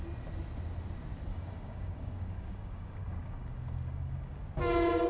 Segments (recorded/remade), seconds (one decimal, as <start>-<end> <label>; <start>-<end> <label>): 0.0-1.3 recorded; 1.3-4.4 remade; 4.4-5.1 recorded